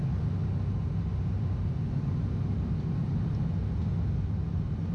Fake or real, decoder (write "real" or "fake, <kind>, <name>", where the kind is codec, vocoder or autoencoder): real